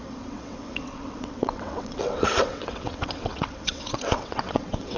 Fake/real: fake